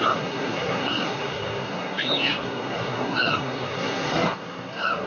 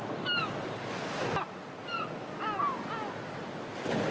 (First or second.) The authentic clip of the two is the second